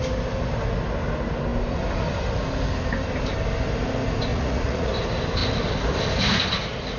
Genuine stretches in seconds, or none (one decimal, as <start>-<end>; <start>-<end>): 0.0-4.3; 4.9-7.0